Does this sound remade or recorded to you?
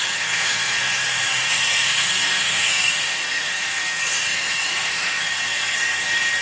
remade